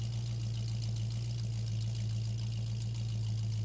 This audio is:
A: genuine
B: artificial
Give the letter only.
A